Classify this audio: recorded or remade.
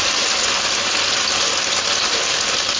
recorded